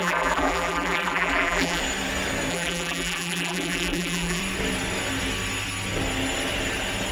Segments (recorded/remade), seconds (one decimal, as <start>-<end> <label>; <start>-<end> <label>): 0.0-1.8 remade; 1.8-2.5 recorded; 2.5-4.4 remade; 4.4-7.1 recorded